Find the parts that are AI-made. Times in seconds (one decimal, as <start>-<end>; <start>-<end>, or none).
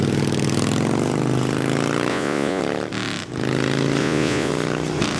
2.1-2.6; 4.0-4.5